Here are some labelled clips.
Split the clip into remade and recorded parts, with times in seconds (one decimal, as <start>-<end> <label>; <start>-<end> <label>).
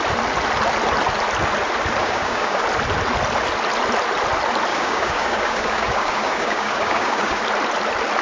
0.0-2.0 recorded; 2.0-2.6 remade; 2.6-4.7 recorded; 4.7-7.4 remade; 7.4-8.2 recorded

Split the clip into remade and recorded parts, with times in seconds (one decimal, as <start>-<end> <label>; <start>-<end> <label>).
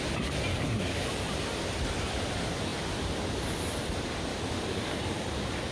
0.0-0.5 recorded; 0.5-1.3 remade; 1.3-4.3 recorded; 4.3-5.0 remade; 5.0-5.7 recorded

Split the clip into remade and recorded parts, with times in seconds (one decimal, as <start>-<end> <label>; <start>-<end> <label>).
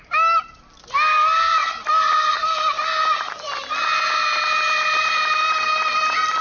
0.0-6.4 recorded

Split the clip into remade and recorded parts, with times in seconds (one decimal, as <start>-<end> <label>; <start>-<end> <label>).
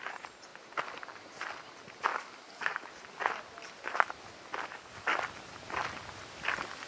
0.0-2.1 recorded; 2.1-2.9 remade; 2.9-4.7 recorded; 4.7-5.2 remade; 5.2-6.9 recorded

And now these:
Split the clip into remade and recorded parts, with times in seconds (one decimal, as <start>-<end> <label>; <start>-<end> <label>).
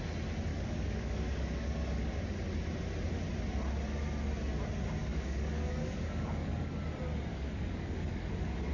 0.0-0.5 recorded; 0.5-2.1 remade; 2.1-5.0 recorded; 5.0-6.8 remade; 6.8-7.3 recorded; 7.3-8.7 remade